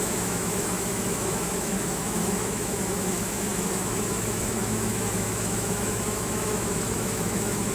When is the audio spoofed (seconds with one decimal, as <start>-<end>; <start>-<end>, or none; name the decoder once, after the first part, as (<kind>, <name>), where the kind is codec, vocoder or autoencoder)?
0.0-7.7 (autoencoder, DAC-VAE)